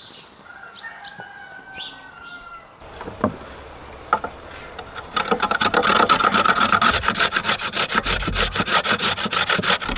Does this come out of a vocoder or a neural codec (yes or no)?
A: no